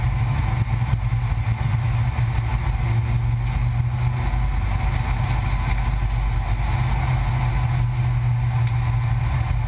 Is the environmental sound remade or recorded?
recorded